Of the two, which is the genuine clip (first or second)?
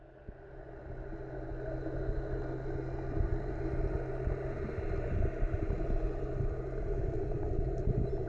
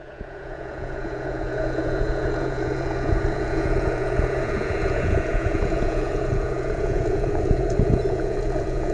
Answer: first